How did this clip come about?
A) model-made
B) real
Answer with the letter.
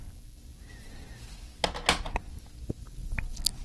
B